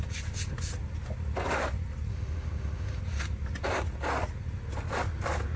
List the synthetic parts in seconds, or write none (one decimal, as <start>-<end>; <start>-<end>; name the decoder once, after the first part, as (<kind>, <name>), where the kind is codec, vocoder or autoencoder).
2.1-3.0 (autoencoder, DAC-VAE)